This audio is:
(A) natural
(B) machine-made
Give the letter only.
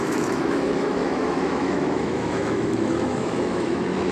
B